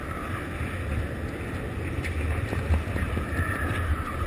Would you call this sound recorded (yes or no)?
yes